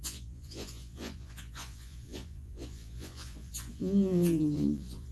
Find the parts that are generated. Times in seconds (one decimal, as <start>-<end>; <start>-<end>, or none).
0.0-5.1